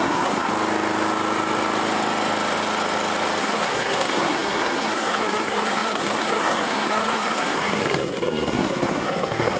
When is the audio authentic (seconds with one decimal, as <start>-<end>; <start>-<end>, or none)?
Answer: 0.5-3.4